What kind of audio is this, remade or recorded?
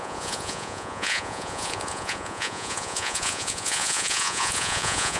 remade